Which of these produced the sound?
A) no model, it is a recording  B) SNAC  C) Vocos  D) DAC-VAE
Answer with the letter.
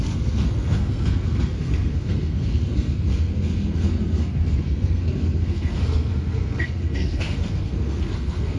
B